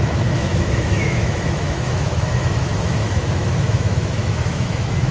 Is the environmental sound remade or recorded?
remade